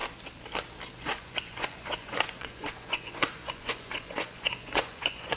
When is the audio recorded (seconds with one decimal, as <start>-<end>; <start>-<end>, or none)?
0.0-1.0